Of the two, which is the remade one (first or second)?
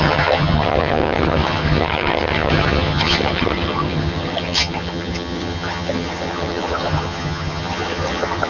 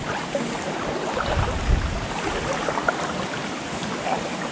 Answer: first